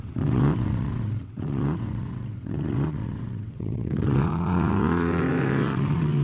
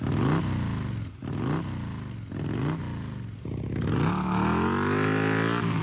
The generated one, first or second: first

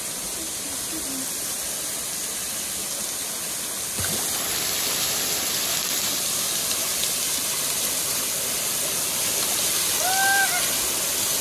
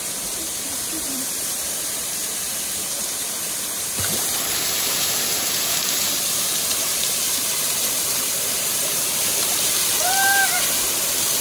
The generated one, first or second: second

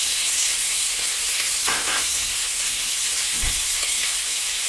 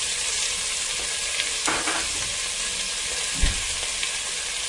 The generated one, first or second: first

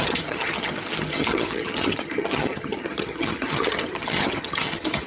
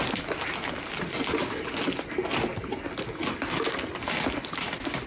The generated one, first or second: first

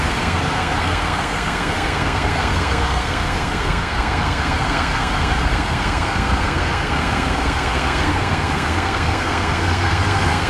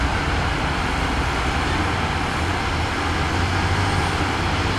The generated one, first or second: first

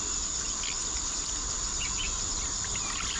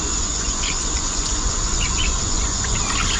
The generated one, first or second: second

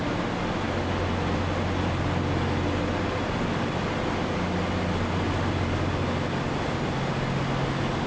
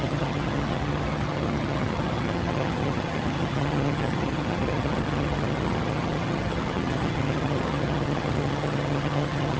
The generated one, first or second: second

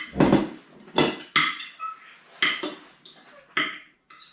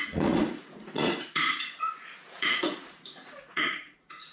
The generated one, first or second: second